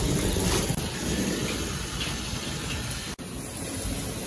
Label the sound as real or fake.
real